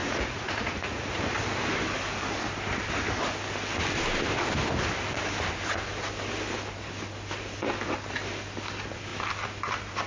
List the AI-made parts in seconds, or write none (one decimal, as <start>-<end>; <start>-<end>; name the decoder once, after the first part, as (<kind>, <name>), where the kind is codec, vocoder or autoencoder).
0.0-1.2 (vocoder, Vocos)